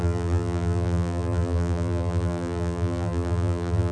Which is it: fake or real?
fake